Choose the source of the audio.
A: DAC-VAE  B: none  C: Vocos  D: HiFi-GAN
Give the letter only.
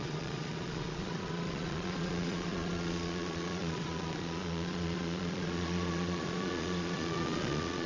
C